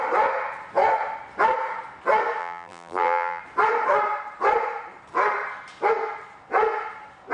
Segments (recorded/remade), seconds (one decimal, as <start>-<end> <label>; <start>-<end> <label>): 0.0-2.4 recorded; 2.4-3.4 remade; 3.4-7.3 recorded